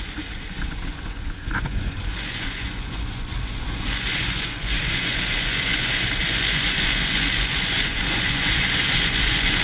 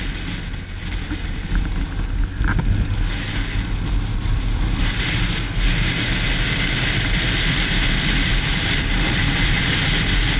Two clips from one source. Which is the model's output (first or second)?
first